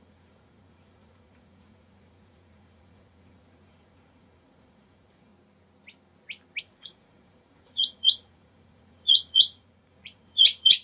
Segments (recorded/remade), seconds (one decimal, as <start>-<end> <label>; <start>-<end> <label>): 0.0-5.3 remade; 5.3-6.6 recorded; 6.6-10.8 remade